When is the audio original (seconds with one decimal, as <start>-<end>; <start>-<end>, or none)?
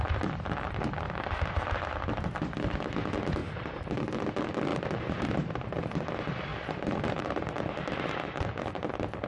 0.0-3.4; 3.9-4.7; 5.5-6.5; 8.7-9.3